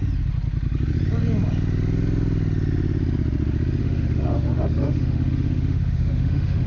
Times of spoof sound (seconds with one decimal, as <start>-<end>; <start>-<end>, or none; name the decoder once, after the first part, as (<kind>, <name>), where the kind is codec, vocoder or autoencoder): 3.8-6.7 (autoencoder, DAC-VAE)